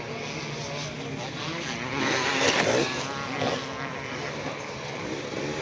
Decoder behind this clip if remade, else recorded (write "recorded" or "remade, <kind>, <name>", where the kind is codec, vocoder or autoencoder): recorded